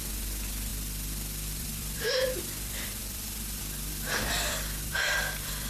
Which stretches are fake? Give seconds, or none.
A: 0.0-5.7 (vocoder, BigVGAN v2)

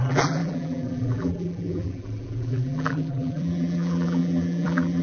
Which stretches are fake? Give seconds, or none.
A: 0.0-5.0 (vocoder, BigVGAN v2)

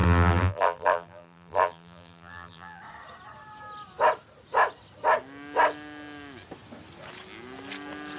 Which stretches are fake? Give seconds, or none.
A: 0.0-2.8 (vocoder, BigVGAN v2)

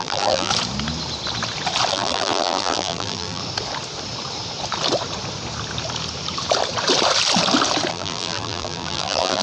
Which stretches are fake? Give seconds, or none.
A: 0.0-0.5 (vocoder, BigVGAN v2); 1.9-3.4; 7.9-9.4

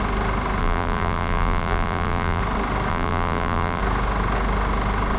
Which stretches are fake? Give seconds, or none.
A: 0.6-2.4 (vocoder, BigVGAN v2); 2.9-3.8

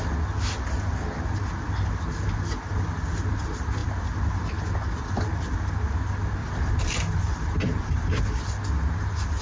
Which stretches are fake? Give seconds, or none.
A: 6.4-8.5 (vocoder, BigVGAN v2)